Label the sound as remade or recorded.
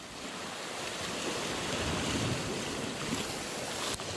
recorded